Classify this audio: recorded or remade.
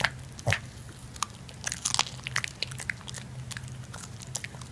recorded